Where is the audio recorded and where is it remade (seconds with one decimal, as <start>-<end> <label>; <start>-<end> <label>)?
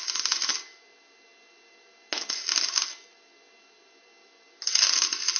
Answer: 0.0-5.4 recorded